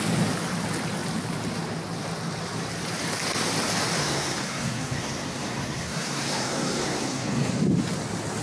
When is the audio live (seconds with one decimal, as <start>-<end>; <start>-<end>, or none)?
0.0-4.0; 7.5-8.4